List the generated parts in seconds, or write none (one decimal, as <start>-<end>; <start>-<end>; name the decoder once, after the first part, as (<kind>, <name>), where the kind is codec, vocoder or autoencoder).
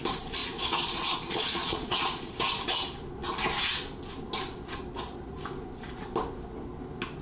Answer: 0.4-2.3 (vocoder, Vocos)